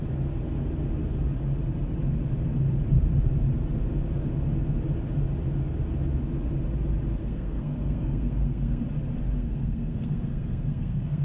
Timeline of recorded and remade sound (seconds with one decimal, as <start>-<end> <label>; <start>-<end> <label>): 0.0-7.2 recorded; 7.2-8.8 remade; 8.8-9.4 recorded; 9.4-11.2 remade